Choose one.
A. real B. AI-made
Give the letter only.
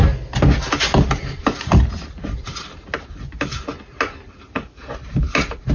A